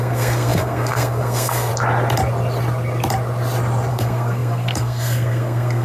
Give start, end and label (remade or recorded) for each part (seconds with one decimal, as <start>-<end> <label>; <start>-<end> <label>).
0.0-1.7 remade; 1.7-3.9 recorded; 3.9-5.8 remade